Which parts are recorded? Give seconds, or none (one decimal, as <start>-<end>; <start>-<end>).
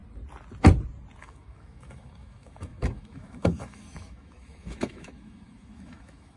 0.0-1.2